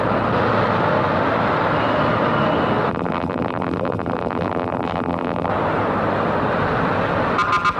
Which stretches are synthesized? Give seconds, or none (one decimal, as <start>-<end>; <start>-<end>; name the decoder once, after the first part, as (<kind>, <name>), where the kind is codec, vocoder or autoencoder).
2.9-5.5 (vocoder, BigVGAN v2)